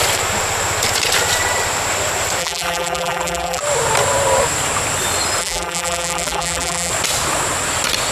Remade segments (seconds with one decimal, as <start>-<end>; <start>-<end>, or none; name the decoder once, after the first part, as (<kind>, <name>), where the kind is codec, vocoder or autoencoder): 2.4-3.6 (vocoder, BigVGAN v2); 5.4-6.9